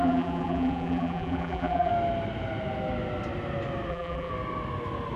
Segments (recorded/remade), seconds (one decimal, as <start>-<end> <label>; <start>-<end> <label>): 0.0-1.9 remade; 1.9-3.9 recorded; 3.9-4.3 remade; 4.3-5.2 recorded